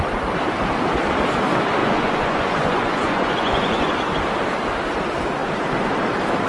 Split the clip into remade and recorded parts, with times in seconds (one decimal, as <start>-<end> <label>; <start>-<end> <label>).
0.0-1.8 recorded; 1.8-3.9 remade; 3.9-6.5 recorded